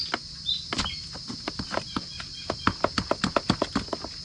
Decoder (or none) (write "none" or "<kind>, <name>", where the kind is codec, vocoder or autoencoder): none